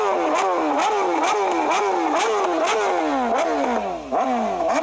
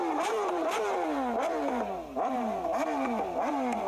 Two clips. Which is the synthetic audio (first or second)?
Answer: second